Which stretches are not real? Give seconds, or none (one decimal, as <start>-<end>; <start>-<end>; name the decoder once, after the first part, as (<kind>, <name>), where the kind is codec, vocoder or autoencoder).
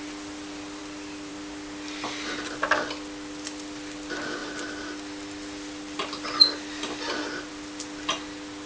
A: none